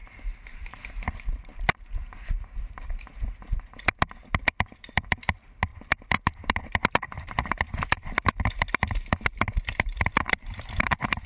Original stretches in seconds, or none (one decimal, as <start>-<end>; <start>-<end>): 2.5-9.9; 10.9-11.3